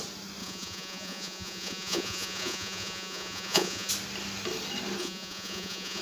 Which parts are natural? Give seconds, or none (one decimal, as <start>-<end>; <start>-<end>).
0.0-0.4; 3.9-5.0